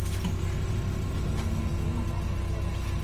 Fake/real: real